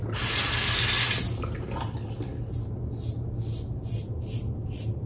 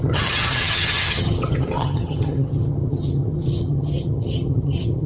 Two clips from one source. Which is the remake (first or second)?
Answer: second